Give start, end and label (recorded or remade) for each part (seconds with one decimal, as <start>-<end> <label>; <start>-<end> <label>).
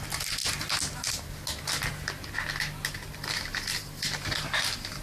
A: 0.0-3.7 recorded; 3.7-4.3 remade; 4.3-5.0 recorded